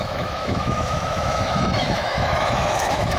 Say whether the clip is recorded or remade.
remade